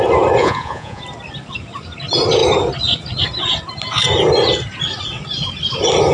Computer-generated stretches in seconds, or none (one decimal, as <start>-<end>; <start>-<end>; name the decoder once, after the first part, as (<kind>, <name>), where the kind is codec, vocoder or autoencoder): 0.4-1.0 (vocoder, Vocos)